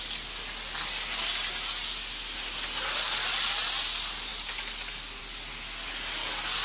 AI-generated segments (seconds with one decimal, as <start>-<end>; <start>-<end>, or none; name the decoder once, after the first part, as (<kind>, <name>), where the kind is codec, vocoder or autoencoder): none